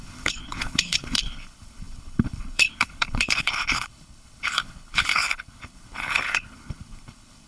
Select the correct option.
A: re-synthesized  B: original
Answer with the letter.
A